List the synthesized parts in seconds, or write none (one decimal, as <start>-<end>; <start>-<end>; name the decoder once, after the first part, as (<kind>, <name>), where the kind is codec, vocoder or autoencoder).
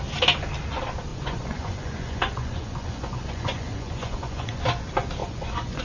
1.1-4.6 (vocoder, Vocos); 5.2-5.8